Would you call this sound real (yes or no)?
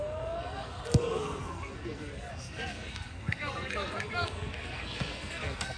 no